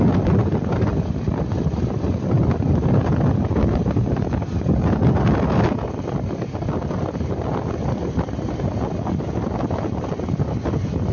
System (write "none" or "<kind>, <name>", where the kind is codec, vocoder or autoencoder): none